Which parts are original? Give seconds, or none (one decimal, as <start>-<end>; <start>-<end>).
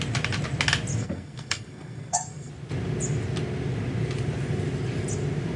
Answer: 0.0-1.0; 2.5-5.6